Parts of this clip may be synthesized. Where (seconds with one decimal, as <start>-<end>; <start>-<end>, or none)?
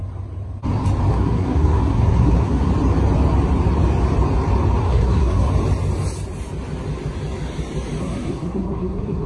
1.1-2.7; 4.8-5.5; 8.0-9.3